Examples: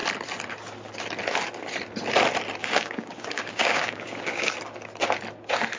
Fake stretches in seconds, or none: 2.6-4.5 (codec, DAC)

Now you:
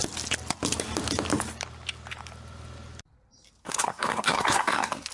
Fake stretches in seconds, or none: 3.6-5.1 (codec, SNAC)

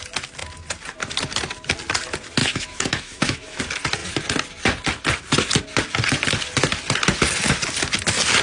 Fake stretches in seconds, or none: 2.4-3.6 (autoencoder, DAC-VAE)

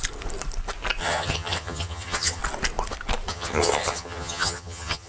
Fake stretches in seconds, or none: 1.0-2.4 (vocoder, HiFi-GAN); 3.3-5.1

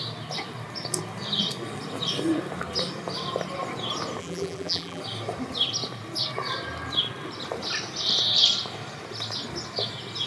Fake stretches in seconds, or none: 4.2-5.0 (vocoder, BigVGAN v2)

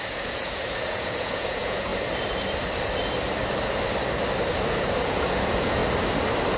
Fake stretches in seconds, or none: 0.0-1.9 (vocoder, Vocos); 4.5-5.8